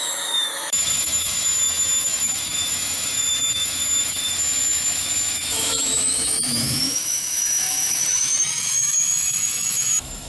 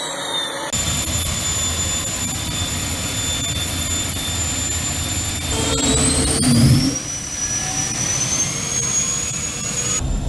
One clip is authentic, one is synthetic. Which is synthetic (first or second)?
first